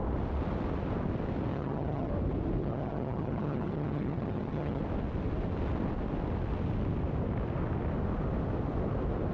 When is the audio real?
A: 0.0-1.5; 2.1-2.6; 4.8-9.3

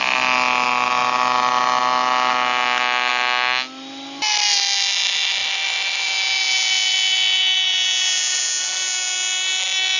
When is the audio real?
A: 0.0-10.0

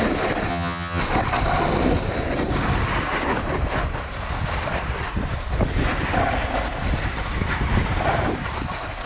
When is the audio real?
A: 0.0-0.5; 1.0-9.1

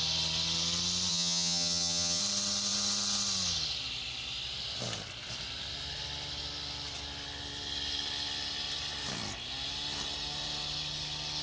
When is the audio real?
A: 0.0-1.1; 2.2-11.4